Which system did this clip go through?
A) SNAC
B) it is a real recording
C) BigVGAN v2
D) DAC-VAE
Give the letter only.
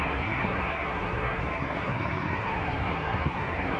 A